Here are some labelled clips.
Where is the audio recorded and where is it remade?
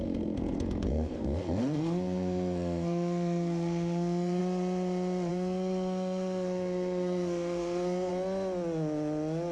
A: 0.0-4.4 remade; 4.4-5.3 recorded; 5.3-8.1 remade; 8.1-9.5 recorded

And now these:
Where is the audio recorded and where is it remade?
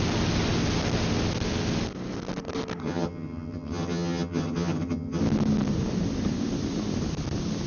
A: 0.0-2.8 recorded; 2.8-5.2 remade; 5.2-7.7 recorded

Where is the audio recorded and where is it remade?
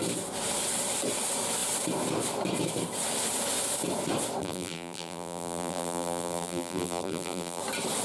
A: 0.0-4.4 recorded; 4.4-7.6 remade; 7.6-8.0 recorded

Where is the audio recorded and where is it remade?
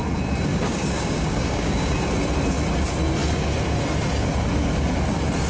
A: 0.0-0.5 recorded; 0.5-2.0 remade; 2.0-5.5 recorded